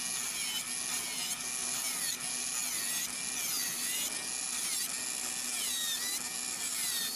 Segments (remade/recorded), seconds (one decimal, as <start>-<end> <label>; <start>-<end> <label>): 0.0-7.2 recorded